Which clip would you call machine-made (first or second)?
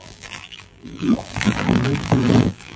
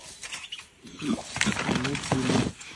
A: first